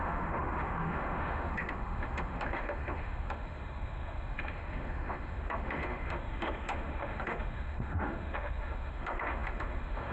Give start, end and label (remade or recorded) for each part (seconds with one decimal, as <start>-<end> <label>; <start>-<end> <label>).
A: 0.0-10.1 remade